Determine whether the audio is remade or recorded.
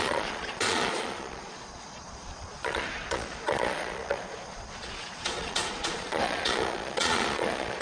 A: remade